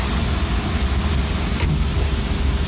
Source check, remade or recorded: recorded